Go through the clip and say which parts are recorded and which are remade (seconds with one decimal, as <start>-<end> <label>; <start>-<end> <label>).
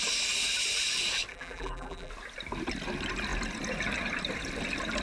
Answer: 0.0-1.3 recorded; 1.3-2.1 remade; 2.1-5.0 recorded